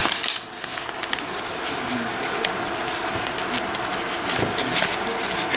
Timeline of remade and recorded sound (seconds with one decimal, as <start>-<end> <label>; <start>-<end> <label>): 0.0-1.3 remade; 1.3-5.6 recorded